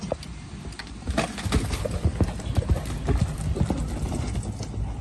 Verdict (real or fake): real